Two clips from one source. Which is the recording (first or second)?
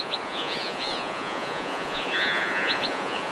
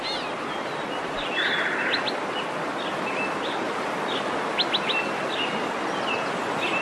second